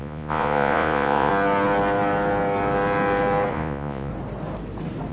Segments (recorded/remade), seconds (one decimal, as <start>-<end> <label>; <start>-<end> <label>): 0.0-1.3 remade; 1.3-3.5 recorded; 3.5-4.1 remade; 4.1-5.1 recorded